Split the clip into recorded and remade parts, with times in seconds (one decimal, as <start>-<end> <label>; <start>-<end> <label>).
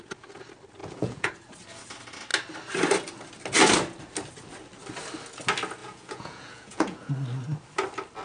0.0-0.8 recorded; 0.8-1.3 remade; 1.3-5.8 recorded; 5.8-7.1 remade; 7.1-8.2 recorded